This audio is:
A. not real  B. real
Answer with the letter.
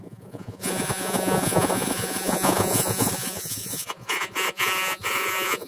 A